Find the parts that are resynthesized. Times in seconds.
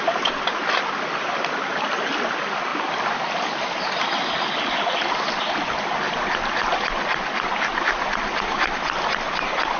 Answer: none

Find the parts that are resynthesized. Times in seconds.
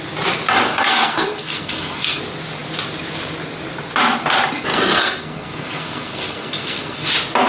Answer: 0.7-2.2 (codec, SNAC); 4.7-7.1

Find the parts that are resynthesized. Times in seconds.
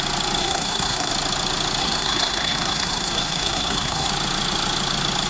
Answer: 0.4-1.1 (codec, SNAC); 1.8-4.1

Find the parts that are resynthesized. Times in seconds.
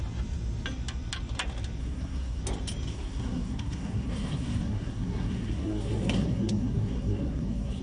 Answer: 1.8-2.4 (codec, SNAC); 2.9-7.8